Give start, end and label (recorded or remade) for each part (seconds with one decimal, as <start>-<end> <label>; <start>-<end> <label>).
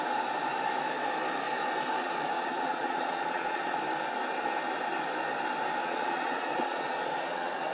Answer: 0.0-2.0 recorded; 2.0-3.8 remade; 3.8-5.8 recorded; 5.8-7.7 remade